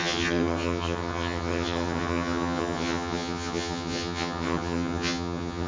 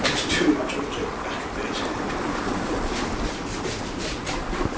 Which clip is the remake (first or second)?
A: first